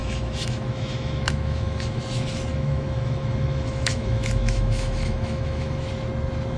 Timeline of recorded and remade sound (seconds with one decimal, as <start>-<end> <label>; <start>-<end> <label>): 0.0-2.0 remade; 2.0-2.5 recorded; 2.5-5.9 remade; 5.9-6.6 recorded